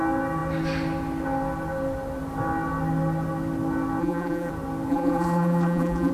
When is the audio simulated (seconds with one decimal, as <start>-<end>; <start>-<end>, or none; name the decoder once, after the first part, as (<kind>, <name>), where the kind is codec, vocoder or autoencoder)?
4.0-4.5 (vocoder, BigVGAN v2); 4.9-6.1